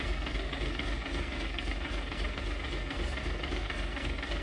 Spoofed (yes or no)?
yes